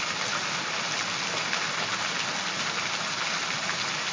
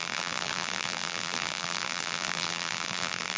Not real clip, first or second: second